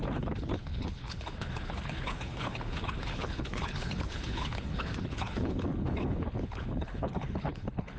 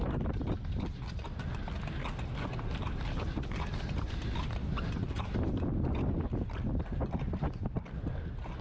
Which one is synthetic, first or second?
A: first